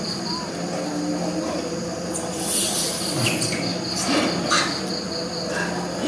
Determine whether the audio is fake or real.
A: real